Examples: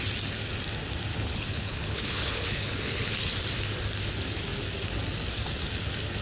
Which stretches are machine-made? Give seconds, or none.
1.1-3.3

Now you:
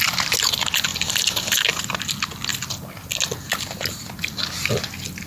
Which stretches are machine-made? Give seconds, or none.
none

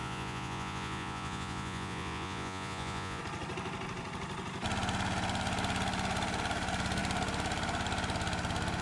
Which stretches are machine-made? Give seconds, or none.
0.0-3.2